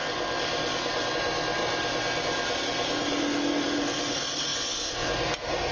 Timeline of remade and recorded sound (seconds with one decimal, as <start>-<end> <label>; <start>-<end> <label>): 0.0-4.5 recorded; 4.5-5.1 remade; 5.1-5.7 recorded